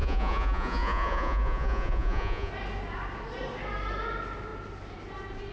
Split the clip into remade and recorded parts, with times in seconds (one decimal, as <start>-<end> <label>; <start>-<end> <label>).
0.0-2.5 remade; 2.5-5.5 recorded